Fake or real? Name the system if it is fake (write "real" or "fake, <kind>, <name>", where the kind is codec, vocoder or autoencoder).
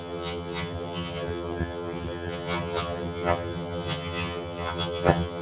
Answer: fake, vocoder, HiFi-GAN